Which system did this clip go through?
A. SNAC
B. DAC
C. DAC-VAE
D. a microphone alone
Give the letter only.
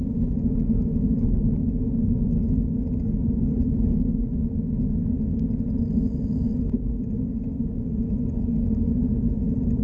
D